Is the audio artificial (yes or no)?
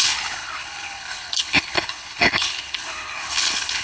yes